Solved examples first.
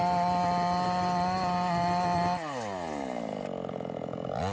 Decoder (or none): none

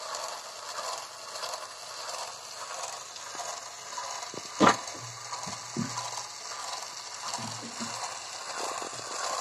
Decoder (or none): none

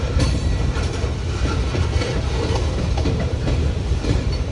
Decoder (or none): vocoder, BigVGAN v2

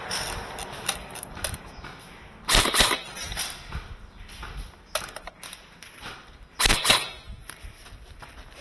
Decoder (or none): none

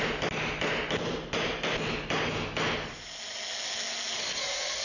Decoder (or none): none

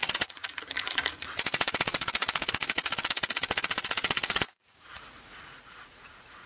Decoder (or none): vocoder, Vocos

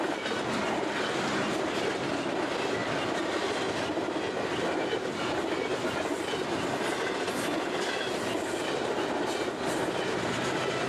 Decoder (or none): none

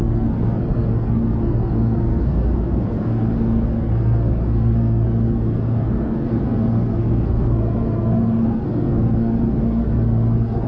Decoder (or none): codec, SNAC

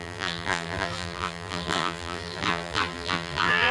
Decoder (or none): vocoder, BigVGAN v2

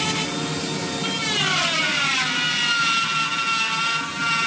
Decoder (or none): none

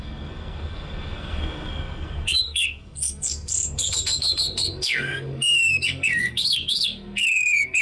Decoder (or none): codec, SNAC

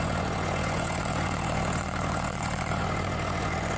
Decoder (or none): vocoder, Vocos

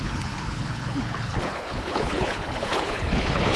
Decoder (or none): codec, HILCodec